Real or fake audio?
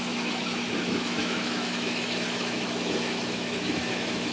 fake